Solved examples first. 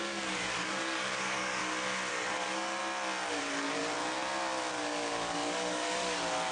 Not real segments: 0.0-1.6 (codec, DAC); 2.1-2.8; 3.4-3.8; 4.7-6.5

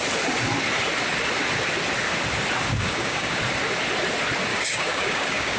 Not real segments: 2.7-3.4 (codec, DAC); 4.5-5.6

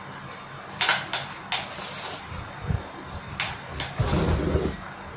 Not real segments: none

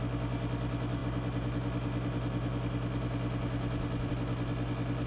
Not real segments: none

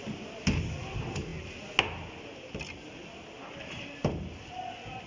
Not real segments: none

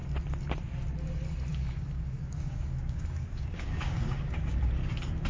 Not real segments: 1.5-4.6 (codec, DAC)

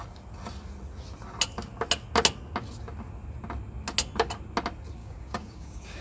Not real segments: 5.0-6.0 (codec, DAC)